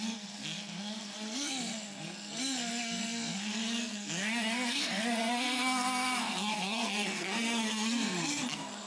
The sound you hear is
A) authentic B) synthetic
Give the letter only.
B